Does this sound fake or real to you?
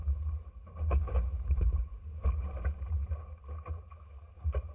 real